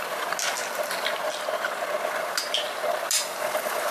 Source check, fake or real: real